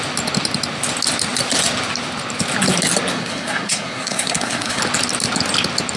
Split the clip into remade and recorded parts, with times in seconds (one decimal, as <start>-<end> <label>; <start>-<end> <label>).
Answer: 0.0-3.1 recorded; 3.1-4.8 remade; 4.8-6.0 recorded